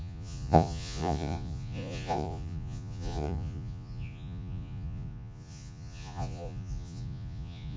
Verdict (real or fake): fake